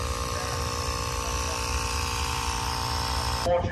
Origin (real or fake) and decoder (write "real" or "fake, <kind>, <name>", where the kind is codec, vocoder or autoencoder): real